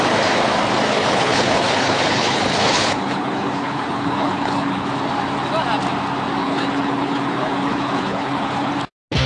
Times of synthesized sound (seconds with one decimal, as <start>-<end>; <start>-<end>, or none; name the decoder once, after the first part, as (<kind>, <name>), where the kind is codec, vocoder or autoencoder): 0.9-4.9 (codec, HILCodec); 6.4-8.7